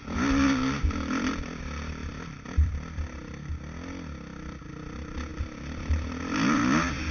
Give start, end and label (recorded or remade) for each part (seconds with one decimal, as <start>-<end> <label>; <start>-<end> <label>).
0.0-2.0 recorded; 2.0-3.5 remade; 3.5-5.3 recorded; 5.3-6.2 remade; 6.2-7.1 recorded